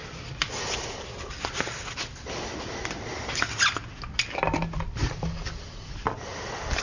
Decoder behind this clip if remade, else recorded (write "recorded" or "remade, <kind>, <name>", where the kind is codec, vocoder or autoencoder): recorded